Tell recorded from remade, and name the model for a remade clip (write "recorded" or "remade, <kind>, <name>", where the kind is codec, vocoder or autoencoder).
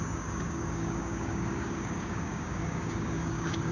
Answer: remade, codec, DAC